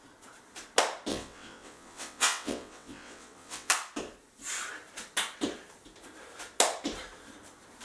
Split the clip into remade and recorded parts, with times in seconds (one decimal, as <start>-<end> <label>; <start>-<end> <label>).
0.0-1.1 recorded; 1.1-3.7 remade; 3.7-7.8 recorded